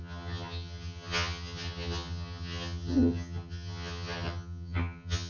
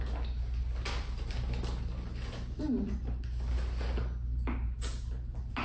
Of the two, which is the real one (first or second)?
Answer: second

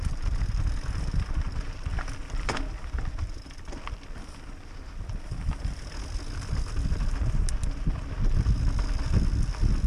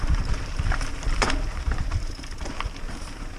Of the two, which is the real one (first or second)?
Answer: first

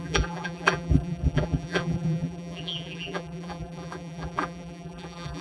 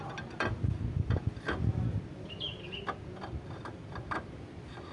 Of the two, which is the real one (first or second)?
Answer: second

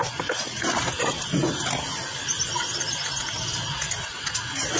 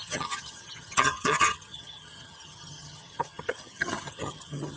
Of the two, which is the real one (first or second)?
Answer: first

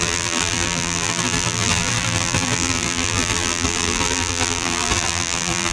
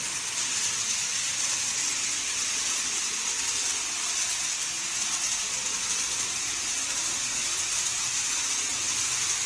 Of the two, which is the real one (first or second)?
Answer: second